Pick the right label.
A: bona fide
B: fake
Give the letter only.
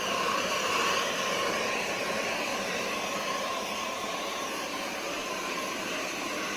B